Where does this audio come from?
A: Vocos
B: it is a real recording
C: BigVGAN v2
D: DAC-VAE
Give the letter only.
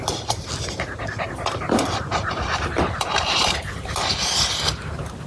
B